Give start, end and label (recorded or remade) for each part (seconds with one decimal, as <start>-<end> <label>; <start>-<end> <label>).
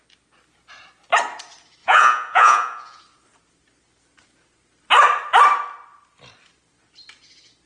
0.0-1.8 recorded; 1.8-3.0 remade; 3.0-7.7 recorded